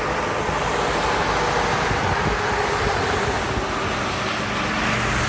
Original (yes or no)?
yes